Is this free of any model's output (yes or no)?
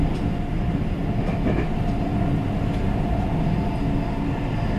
yes